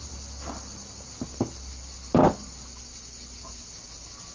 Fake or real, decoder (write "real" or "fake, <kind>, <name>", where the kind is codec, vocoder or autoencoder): real